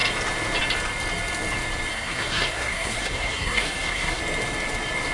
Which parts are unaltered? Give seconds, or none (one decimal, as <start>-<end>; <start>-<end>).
0.0-1.9; 4.2-5.1